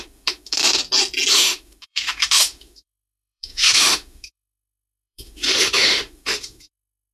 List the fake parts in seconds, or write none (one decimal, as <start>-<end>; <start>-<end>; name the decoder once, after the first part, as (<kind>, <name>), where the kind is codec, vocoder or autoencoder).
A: 0.0-0.8 (autoencoder, DAC-VAE); 1.3-7.1